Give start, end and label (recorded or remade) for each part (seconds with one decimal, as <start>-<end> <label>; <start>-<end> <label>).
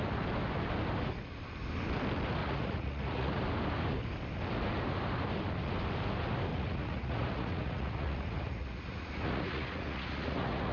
0.0-2.4 recorded; 2.4-3.4 remade; 3.4-6.5 recorded; 6.5-10.7 remade